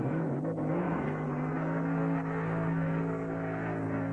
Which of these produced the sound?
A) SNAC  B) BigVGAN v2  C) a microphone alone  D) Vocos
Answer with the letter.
A